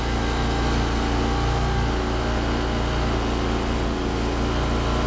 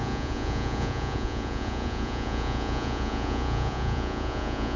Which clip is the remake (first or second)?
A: second